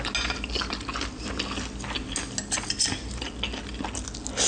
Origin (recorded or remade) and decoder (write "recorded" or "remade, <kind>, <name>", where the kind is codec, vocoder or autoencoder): recorded